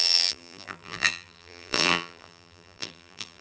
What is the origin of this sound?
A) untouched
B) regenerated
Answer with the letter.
B